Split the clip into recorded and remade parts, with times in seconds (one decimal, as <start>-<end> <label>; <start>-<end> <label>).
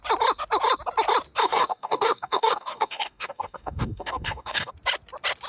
0.0-1.4 recorded; 1.4-4.7 remade; 4.7-5.5 recorded